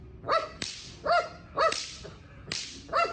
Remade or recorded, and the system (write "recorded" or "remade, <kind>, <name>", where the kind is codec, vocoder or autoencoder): recorded